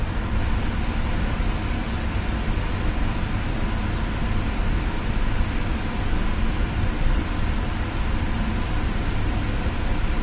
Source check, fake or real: real